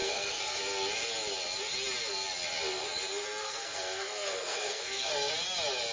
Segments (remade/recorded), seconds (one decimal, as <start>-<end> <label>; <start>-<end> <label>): 0.0-0.6 remade; 0.6-3.4 recorded; 3.4-5.3 remade; 5.3-5.9 recorded